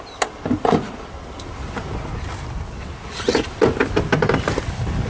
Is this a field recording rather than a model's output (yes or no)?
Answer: yes